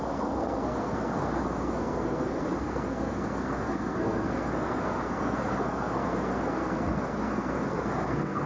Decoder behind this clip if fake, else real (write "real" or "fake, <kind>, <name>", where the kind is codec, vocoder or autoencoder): fake, codec, SNAC